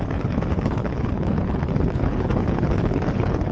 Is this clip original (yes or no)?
no